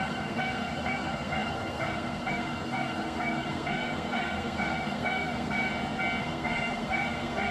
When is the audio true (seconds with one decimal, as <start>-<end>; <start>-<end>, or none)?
5.7-6.2